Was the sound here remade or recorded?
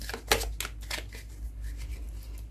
recorded